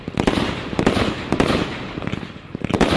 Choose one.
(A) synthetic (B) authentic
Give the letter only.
B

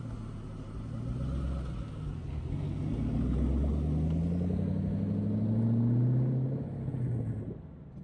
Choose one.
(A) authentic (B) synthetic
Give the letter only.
A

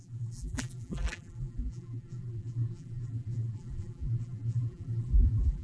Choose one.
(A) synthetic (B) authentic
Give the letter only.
A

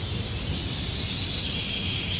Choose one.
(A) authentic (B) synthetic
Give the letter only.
A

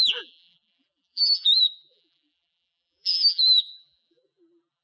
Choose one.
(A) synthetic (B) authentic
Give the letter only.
A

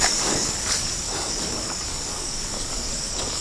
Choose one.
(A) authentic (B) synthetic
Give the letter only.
B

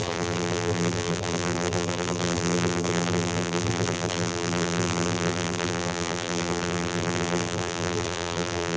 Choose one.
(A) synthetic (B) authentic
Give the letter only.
A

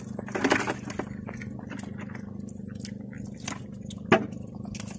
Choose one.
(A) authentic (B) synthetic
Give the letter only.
A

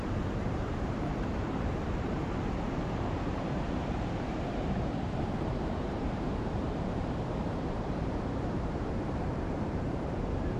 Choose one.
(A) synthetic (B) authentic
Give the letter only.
A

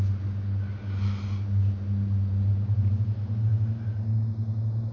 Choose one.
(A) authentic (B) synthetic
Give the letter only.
A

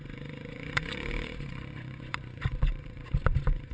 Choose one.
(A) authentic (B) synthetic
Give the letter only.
B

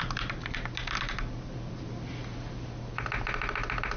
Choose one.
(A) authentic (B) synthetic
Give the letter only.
A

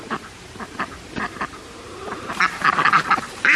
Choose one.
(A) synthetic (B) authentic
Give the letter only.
A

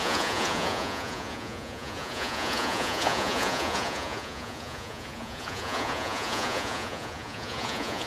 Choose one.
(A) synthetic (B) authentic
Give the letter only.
A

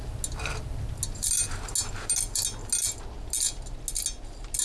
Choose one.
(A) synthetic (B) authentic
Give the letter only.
B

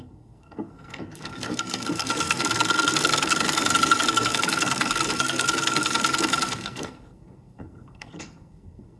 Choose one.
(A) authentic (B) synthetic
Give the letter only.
B